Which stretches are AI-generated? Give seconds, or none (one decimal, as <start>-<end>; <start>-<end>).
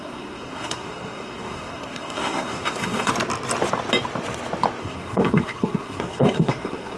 0.0-3.1; 4.8-7.0